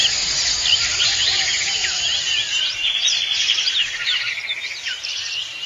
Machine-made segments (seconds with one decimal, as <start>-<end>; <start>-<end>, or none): 1.8-4.3